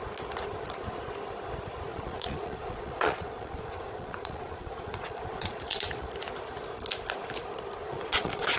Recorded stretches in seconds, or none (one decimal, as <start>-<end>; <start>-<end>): 0.0-1.9; 6.1-7.8